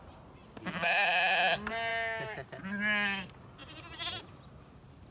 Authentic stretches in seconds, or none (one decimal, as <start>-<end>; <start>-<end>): 0.0-5.1